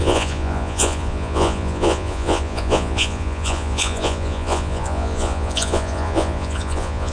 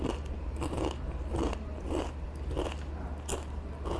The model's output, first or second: first